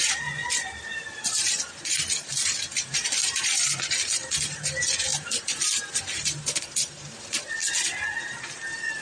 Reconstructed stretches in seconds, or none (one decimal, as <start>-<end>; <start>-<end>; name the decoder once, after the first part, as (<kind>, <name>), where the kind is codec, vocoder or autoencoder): 0.0-7.6 (vocoder, BigVGAN v2); 8.1-9.0

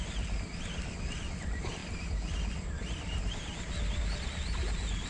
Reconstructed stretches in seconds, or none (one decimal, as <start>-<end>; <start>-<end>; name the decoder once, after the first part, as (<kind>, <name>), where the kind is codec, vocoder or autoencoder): none

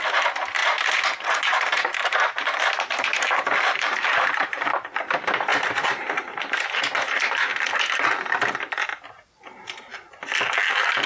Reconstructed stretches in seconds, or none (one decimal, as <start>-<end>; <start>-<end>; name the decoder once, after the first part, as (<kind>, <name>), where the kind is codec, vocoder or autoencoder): 0.0-7.5 (vocoder, BigVGAN v2); 9.4-9.9; 10.7-11.1

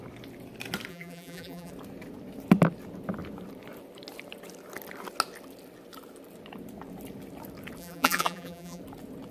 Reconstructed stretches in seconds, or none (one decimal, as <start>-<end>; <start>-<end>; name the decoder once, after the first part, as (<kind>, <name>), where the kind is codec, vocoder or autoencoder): 0.9-1.7 (vocoder, BigVGAN v2); 7.8-8.8

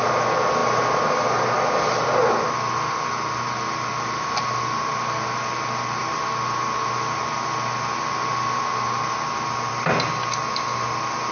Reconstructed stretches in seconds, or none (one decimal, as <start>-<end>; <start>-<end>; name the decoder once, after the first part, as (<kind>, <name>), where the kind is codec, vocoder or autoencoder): none

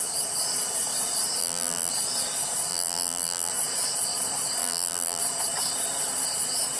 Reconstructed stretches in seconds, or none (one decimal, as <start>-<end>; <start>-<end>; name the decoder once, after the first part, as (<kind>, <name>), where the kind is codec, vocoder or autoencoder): 1.4-1.9 (vocoder, BigVGAN v2); 2.7-3.5; 4.6-5.2

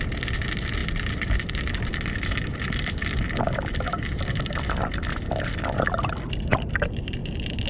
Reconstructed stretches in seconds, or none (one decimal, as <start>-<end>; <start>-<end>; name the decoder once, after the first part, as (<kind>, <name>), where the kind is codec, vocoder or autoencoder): 0.0-7.2 (vocoder, BigVGAN v2)